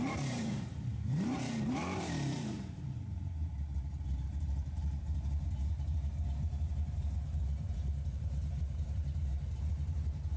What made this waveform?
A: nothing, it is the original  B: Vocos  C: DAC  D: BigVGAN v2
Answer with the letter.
D